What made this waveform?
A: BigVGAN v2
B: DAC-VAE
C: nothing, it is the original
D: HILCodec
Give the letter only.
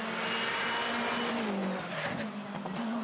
C